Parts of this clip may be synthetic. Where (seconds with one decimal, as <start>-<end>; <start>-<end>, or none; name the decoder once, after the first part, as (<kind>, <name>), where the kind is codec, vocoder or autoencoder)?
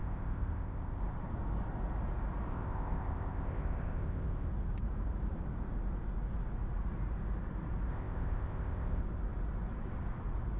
0.0-1.0 (codec, ZipCodec); 2.5-4.5; 7.9-9.0